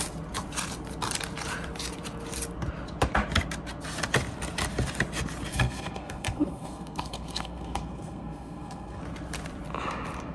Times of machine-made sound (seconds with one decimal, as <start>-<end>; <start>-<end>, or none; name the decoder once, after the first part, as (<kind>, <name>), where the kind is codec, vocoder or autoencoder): 5.5-9.0 (codec, SNAC)